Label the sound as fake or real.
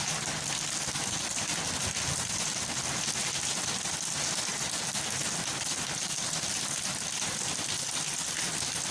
real